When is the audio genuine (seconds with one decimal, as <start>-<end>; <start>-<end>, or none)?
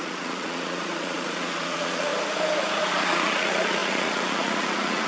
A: 2.1-2.7